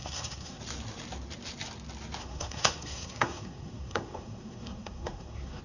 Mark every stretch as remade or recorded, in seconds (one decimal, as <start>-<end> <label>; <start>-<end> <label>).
0.0-0.6 remade; 0.6-2.2 recorded; 2.2-5.6 remade